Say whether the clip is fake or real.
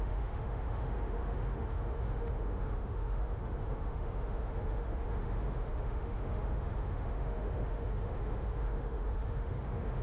fake